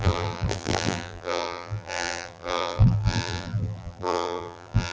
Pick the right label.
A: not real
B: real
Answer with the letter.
A